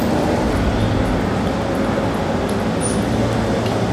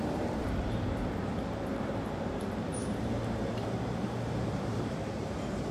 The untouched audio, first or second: first